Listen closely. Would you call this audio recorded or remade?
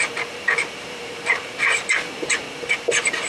remade